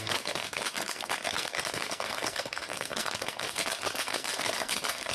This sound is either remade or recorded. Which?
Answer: remade